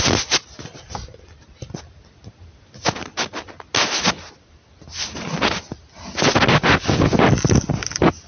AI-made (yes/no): no